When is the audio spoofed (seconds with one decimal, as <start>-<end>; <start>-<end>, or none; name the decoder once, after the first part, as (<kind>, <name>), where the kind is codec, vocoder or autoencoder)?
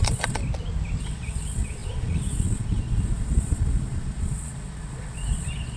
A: 0.0-0.4 (vocoder, Vocos); 1.0-5.8